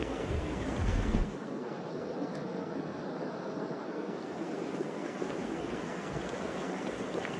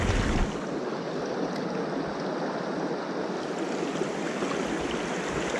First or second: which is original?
second